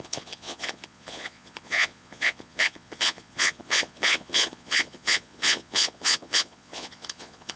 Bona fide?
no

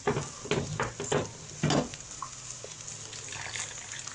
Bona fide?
yes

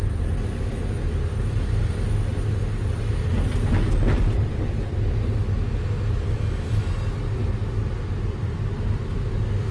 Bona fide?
yes